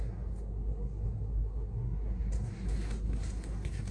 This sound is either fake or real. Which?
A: fake